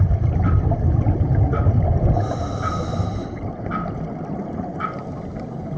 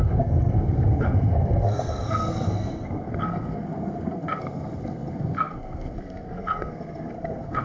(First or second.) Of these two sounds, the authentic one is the first